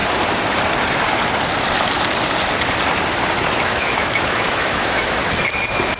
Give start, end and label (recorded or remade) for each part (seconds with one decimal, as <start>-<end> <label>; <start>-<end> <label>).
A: 0.0-3.6 recorded; 3.6-5.2 remade; 5.2-6.0 recorded